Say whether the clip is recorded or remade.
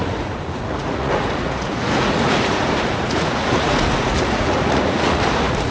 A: remade